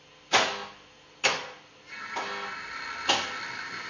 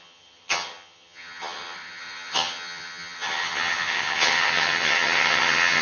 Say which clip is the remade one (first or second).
second